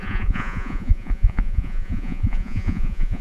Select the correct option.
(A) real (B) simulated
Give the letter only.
B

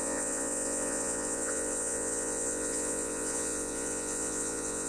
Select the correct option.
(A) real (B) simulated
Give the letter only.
B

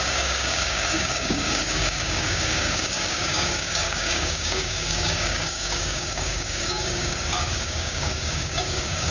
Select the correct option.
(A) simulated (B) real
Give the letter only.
A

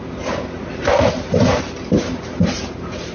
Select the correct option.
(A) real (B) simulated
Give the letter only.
A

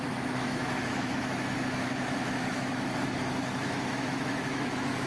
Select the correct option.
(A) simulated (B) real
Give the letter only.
A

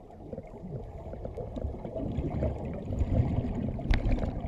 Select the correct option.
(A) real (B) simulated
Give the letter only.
A